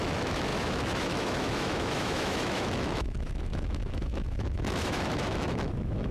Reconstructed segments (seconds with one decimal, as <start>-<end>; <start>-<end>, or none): 0.0-6.1